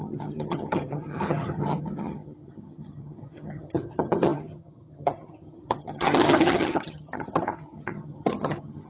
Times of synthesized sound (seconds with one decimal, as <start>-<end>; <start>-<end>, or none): 0.0-8.9